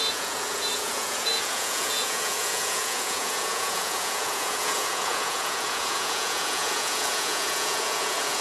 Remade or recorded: remade